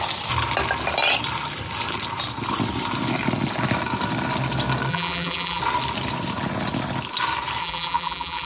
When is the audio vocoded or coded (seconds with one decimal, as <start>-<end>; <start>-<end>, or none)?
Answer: 4.9-5.6; 7.6-8.5